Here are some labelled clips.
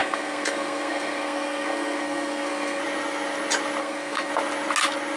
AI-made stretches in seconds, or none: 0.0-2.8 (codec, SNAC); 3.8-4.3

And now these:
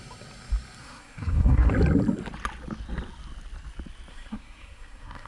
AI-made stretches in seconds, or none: 0.8-1.7 (codec, SNAC); 4.1-5.3

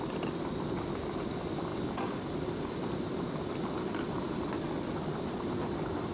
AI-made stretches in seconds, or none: none

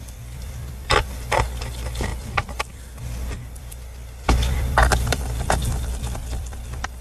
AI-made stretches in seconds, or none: 0.0-7.0 (vocoder, BigVGAN v2)

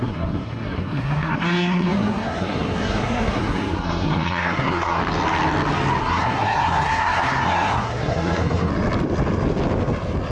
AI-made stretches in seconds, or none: 0.0-5.0 (codec, SNAC); 6.0-8.7

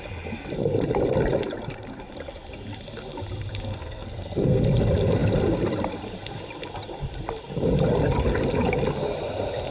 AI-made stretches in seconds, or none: 3.7-4.6 (codec, SNAC)